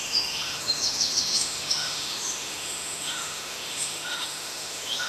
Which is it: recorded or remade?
remade